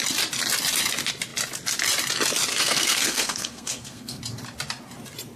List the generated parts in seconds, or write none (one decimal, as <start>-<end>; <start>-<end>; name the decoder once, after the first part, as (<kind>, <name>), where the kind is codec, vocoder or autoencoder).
2.5-4.2 (codec, SNAC)